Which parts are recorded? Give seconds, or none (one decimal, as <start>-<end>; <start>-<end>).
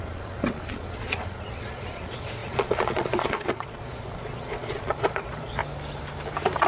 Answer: 5.6-6.7